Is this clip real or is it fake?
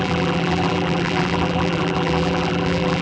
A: fake